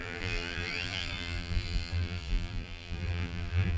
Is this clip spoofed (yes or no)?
yes